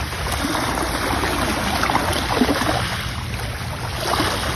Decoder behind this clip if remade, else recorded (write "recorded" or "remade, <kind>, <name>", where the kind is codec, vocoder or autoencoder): recorded